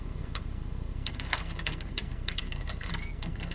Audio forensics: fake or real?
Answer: fake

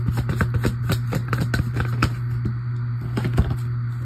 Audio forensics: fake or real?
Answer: real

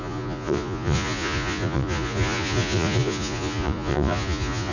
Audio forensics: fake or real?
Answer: fake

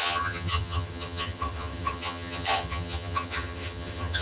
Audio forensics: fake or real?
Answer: fake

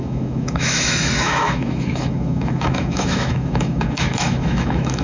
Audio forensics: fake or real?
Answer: fake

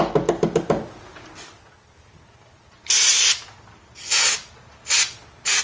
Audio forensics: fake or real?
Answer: real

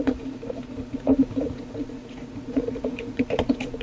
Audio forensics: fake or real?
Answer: fake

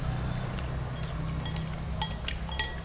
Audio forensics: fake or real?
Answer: real